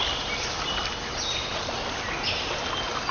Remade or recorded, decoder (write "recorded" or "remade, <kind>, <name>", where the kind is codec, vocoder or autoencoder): recorded